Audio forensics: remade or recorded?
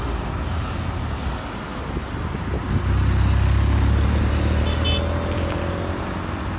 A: recorded